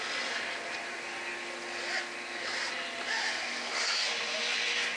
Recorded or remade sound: recorded